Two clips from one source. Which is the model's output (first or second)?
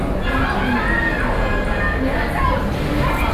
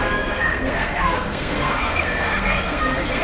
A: second